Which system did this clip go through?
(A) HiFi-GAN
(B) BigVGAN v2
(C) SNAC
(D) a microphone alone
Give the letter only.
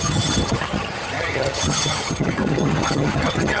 A